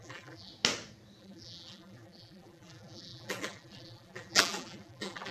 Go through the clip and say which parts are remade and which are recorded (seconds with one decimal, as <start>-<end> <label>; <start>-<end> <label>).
0.0-0.5 remade; 0.5-1.2 recorded; 1.2-5.3 remade